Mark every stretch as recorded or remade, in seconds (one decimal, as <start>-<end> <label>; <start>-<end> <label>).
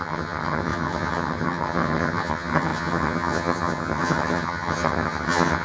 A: 0.0-5.6 remade